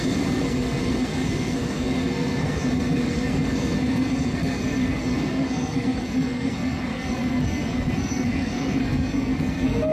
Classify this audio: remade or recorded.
remade